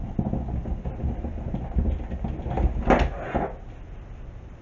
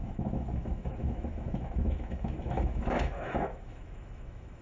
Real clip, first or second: first